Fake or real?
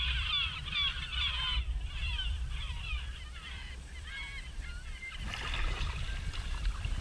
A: fake